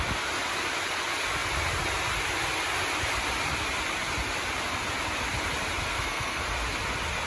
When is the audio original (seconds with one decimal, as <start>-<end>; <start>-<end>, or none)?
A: 0.0-5.9; 6.4-7.3